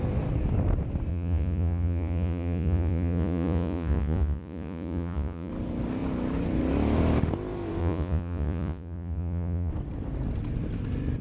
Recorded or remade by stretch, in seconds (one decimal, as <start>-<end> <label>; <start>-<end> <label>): 0.0-1.1 recorded; 1.1-5.5 remade; 5.5-7.8 recorded; 7.8-9.7 remade; 9.7-11.2 recorded